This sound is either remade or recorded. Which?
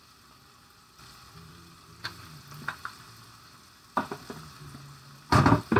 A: recorded